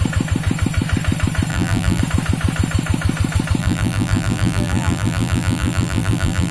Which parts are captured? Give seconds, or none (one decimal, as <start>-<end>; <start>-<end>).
0.0-1.5; 2.0-3.6